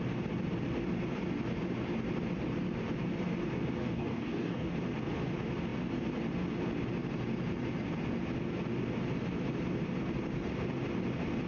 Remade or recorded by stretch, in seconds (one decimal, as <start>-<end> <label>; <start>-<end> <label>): 0.0-3.8 recorded; 3.8-4.7 remade; 4.7-11.5 recorded